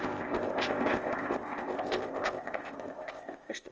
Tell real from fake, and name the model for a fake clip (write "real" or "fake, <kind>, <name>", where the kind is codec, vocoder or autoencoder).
fake, codec, ZipCodec